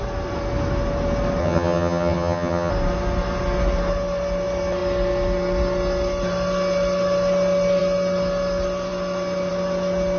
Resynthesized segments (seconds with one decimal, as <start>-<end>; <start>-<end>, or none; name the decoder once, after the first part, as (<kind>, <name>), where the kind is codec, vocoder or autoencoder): 1.4-2.7 (vocoder, HiFi-GAN)